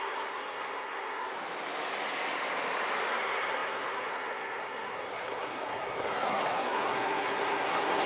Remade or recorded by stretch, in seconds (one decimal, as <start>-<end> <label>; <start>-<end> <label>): 0.0-1.3 remade; 1.3-3.1 recorded; 3.1-8.1 remade